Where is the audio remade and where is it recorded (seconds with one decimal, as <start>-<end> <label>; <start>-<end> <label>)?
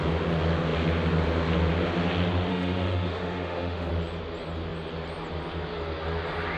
0.0-2.5 recorded; 2.5-3.9 remade; 3.9-6.6 recorded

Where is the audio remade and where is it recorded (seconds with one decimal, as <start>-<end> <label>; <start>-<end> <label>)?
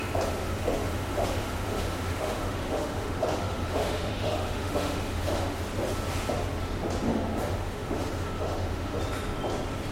0.0-0.4 recorded; 0.4-5.6 remade; 5.6-7.1 recorded; 7.1-9.0 remade; 9.0-9.9 recorded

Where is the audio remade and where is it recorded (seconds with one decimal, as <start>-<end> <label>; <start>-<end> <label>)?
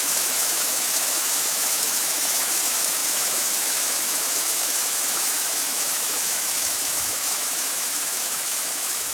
0.0-9.1 remade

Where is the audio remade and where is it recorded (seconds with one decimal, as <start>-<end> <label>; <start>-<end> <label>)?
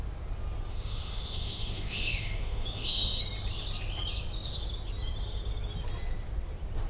0.0-0.7 recorded; 0.7-3.2 remade; 3.2-6.9 recorded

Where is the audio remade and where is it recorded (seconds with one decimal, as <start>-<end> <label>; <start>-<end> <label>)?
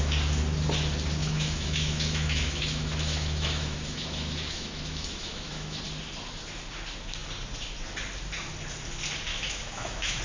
0.0-1.2 recorded; 1.2-5.8 remade; 5.8-9.3 recorded; 9.3-10.2 remade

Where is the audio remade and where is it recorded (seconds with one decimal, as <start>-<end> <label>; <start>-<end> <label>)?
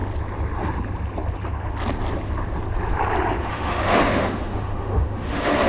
0.0-3.4 recorded; 3.4-5.7 remade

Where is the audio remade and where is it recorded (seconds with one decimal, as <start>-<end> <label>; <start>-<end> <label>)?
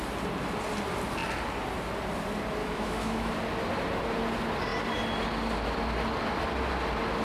0.0-2.6 recorded; 2.6-3.3 remade; 3.3-7.2 recorded